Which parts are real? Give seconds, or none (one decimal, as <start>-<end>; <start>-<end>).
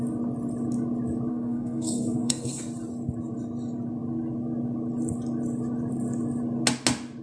0.0-1.3; 2.6-7.2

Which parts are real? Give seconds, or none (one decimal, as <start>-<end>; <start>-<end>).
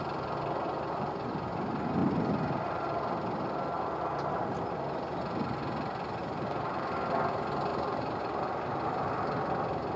0.0-6.2; 6.8-7.7; 9.1-10.0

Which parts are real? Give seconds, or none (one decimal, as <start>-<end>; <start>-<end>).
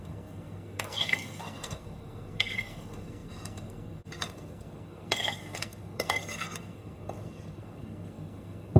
none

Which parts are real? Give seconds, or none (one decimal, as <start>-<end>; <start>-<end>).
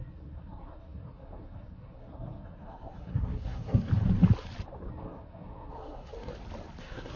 3.9-4.9; 6.3-6.8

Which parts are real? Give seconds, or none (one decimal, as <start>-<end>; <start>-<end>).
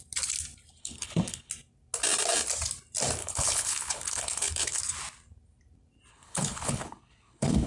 0.0-0.8; 1.5-3.2; 4.8-6.1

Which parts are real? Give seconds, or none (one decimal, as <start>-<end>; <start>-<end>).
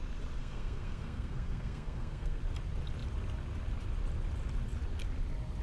0.0-0.4; 2.4-5.6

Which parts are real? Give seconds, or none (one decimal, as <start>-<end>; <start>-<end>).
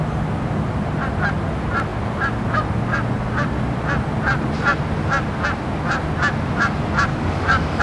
0.0-7.1